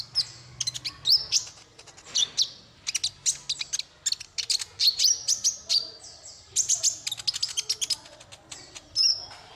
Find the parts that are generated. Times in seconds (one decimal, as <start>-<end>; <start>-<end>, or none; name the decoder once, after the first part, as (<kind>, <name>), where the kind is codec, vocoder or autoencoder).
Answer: none